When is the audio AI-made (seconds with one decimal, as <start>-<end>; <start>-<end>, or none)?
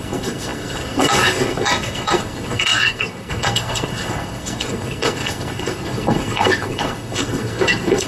0.0-8.1